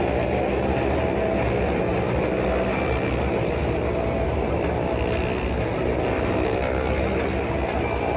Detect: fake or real real